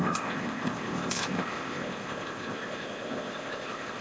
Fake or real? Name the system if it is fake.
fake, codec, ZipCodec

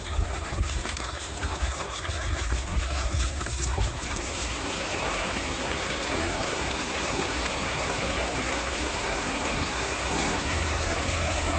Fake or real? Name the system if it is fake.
fake, codec, SNAC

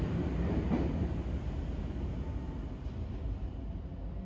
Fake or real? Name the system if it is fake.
real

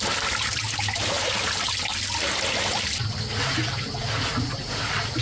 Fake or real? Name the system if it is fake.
real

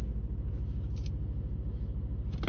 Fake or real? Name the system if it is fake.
real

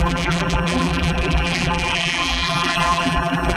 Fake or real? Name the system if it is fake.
fake, vocoder, BigVGAN v2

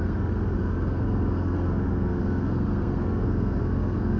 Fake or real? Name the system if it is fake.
fake, codec, SNAC